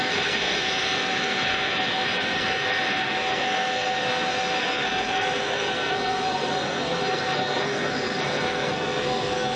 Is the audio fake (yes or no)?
yes